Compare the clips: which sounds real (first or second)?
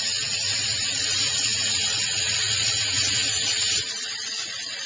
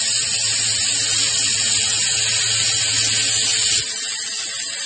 second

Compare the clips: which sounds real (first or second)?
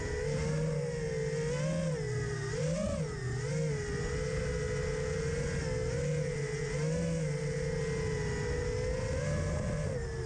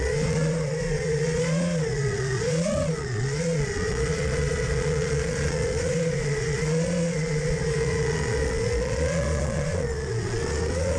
first